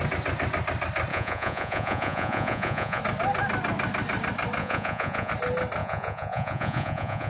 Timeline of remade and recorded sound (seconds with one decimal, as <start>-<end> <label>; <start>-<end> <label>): 0.0-1.1 recorded; 1.1-3.0 remade; 3.0-4.6 recorded; 4.6-5.3 remade; 5.3-5.8 recorded; 5.8-7.3 remade